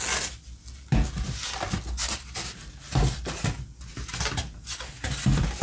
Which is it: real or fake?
real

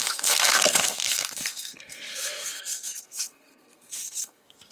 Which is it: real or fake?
fake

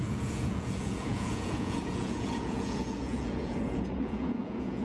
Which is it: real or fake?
fake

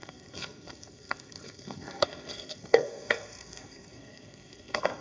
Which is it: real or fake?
fake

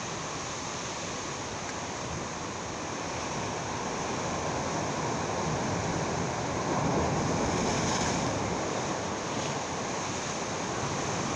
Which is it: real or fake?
real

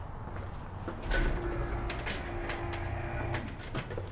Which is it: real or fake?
real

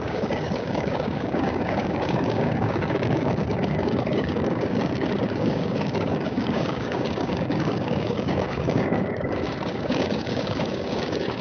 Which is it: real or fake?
fake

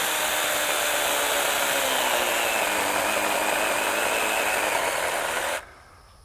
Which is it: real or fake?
real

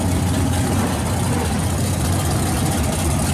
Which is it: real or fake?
real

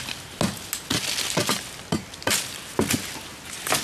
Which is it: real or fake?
real